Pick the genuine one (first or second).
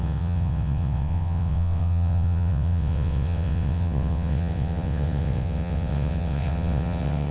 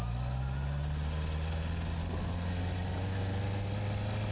second